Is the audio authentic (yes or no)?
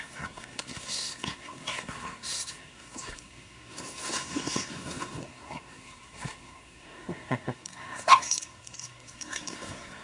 no